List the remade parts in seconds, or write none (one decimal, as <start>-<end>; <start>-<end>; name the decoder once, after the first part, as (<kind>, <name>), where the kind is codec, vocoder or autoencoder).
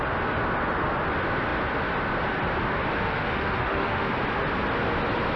2.9-4.1 (autoencoder, DAC-VAE)